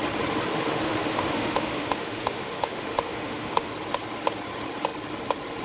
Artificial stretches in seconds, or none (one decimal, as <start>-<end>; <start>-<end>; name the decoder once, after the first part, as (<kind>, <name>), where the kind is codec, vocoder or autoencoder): 0.5-3.7 (autoencoder, DAC-VAE)